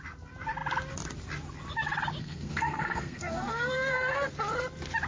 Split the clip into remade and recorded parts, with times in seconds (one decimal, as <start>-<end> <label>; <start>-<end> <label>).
0.0-2.2 recorded; 2.2-4.3 remade; 4.3-5.1 recorded